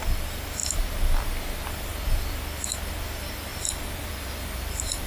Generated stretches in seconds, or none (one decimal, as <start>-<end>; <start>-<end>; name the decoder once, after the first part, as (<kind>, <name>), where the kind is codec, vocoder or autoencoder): 3.5-5.1 (vocoder, BigVGAN v2)